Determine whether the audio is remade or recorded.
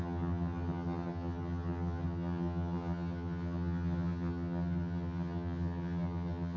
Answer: remade